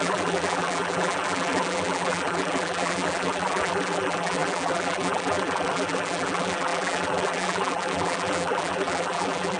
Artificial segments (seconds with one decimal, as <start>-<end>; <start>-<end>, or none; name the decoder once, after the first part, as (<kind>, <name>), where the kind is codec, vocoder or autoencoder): 0.0-9.6 (vocoder, BigVGAN v2)